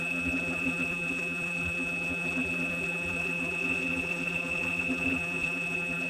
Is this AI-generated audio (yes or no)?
yes